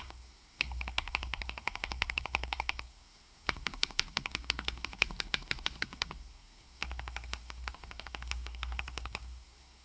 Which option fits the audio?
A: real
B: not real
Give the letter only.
B